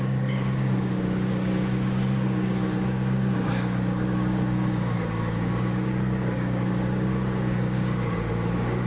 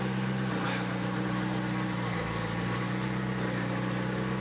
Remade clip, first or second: first